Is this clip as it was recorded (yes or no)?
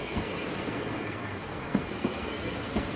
no